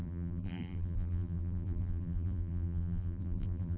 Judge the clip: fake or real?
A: fake